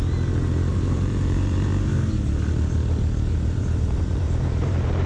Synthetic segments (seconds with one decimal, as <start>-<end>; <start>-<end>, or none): 0.7-1.7; 3.6-5.1